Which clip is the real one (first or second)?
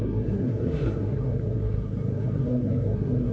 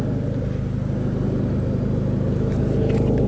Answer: second